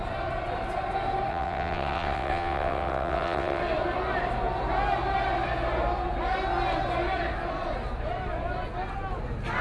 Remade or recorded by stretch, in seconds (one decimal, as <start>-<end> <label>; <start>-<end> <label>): 0.0-1.3 recorded; 1.3-3.6 remade; 3.6-9.6 recorded